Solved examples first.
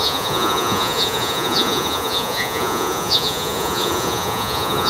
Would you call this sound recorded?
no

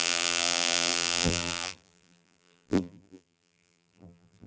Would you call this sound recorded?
no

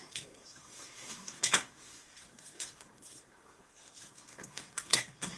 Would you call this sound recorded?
no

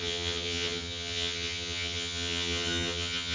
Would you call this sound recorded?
no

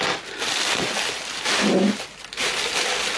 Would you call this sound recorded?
yes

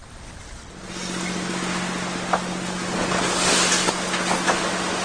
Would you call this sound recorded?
yes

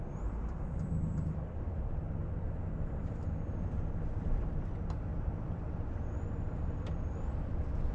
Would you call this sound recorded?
no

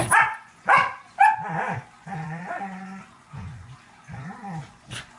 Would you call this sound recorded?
no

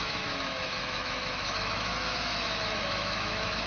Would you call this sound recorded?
no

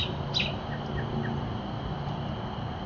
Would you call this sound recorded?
yes